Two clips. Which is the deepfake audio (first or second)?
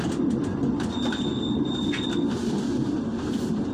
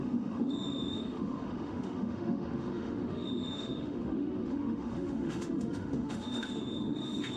second